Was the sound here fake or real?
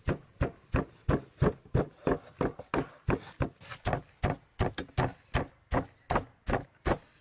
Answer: real